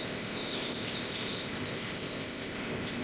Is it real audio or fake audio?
fake